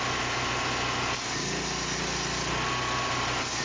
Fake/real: real